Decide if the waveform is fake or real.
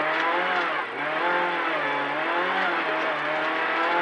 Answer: real